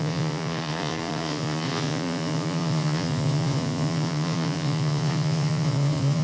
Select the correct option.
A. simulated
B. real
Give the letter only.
A